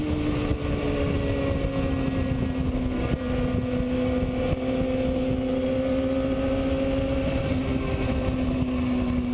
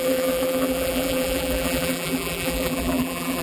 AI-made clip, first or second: second